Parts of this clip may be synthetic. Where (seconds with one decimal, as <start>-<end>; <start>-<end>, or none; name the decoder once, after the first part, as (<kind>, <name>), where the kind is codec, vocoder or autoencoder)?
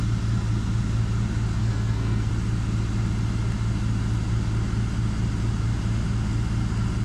1.6-2.3 (codec, SNAC)